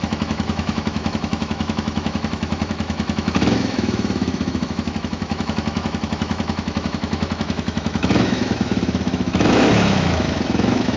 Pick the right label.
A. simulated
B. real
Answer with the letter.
A